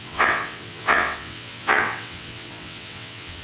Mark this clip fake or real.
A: fake